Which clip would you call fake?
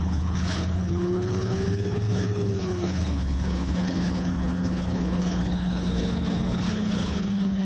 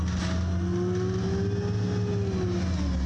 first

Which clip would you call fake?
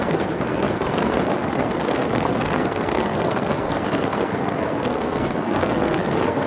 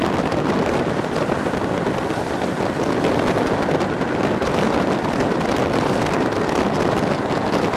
first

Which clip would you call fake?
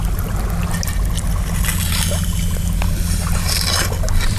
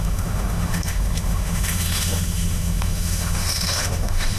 second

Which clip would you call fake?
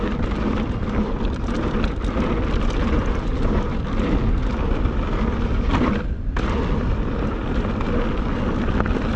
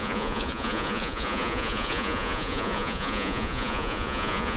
second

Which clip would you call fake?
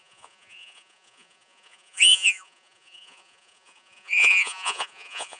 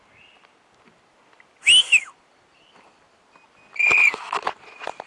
first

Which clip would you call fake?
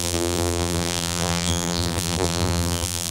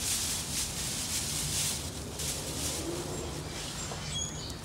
first